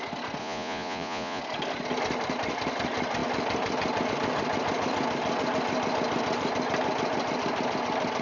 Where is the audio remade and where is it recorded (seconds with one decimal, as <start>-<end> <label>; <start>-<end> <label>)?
0.0-0.4 recorded; 0.4-1.4 remade; 1.4-8.2 recorded